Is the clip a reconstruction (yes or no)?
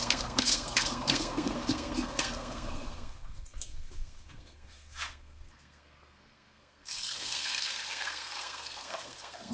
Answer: yes